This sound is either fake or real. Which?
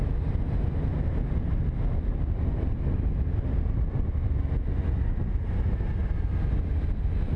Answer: real